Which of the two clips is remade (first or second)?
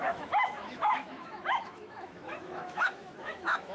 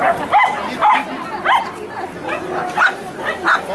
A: first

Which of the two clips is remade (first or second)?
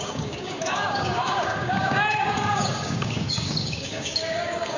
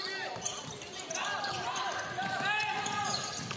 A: first